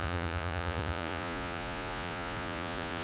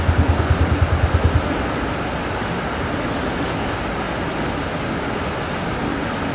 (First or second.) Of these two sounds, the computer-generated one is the first